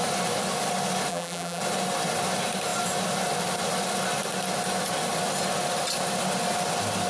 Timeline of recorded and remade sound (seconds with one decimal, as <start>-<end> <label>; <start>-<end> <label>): 0.0-1.1 recorded; 1.1-1.6 remade; 1.6-7.1 recorded